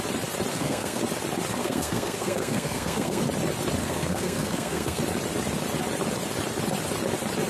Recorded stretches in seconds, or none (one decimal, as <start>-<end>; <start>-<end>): 0.0-0.5; 1.0-1.6; 3.2-3.8; 5.0-7.5